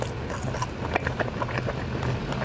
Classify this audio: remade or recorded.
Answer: recorded